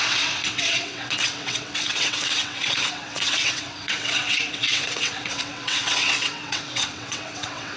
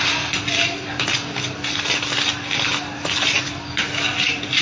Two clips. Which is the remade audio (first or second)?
first